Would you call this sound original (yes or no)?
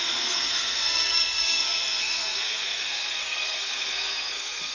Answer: no